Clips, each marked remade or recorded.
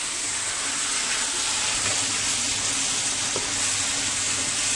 recorded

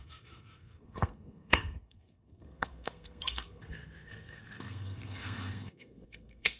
remade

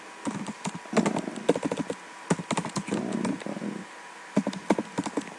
recorded